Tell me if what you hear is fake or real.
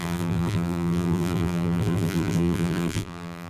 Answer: fake